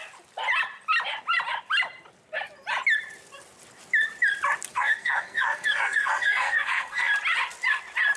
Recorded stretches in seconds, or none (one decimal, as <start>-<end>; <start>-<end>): 0.0-4.7; 7.1-8.2

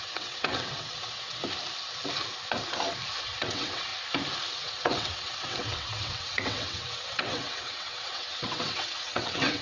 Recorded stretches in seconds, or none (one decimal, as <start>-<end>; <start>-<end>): 1.4-3.2; 3.9-4.5

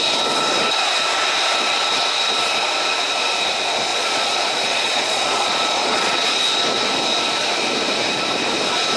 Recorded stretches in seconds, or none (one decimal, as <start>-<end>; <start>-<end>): 0.0-3.9; 6.4-9.0

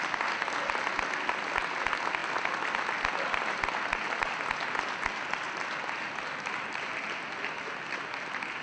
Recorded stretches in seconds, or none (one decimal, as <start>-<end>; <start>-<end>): 0.0-8.6

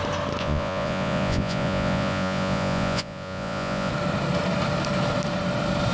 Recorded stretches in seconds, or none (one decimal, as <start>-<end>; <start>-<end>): 0.0-0.4; 3.9-5.9

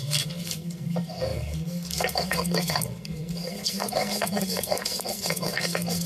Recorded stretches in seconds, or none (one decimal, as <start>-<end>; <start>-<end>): none